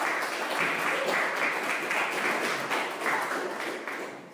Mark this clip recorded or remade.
recorded